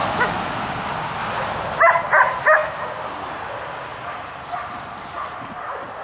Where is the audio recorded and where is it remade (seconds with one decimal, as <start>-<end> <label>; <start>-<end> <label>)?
0.0-0.6 remade; 0.6-6.0 recorded